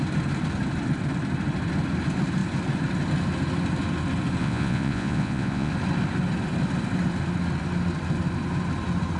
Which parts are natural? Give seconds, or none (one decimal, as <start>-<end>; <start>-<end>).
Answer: 0.0-4.4; 5.7-9.2